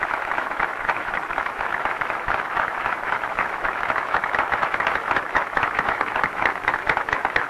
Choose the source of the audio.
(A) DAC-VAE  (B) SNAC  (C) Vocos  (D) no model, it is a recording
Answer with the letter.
A